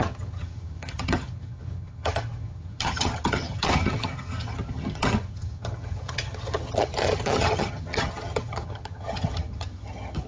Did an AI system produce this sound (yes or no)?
yes